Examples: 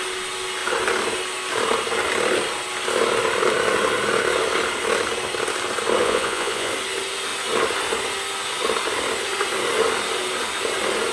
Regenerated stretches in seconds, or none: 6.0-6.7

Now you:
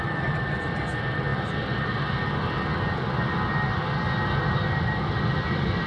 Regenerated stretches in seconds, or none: 0.0-1.3; 4.3-5.9

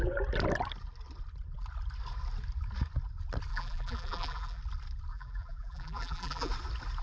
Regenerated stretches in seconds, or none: 3.5-4.6; 5.1-6.5

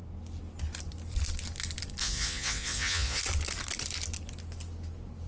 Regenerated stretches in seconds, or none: 2.0-3.2

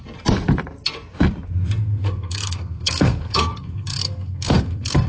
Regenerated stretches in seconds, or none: 1.8-5.1

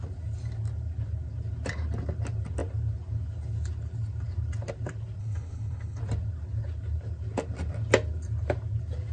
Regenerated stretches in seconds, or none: 5.2-6.0